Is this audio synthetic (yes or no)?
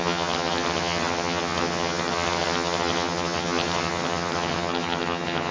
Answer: yes